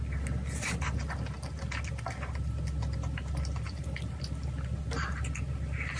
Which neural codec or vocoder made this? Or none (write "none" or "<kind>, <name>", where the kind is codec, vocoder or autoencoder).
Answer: none